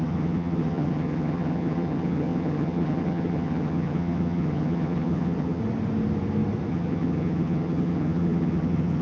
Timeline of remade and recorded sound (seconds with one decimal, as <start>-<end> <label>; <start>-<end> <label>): 0.0-5.6 remade; 5.6-6.7 recorded; 6.7-9.0 remade